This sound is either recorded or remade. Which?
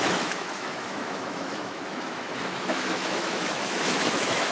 remade